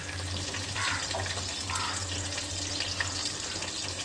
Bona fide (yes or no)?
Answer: yes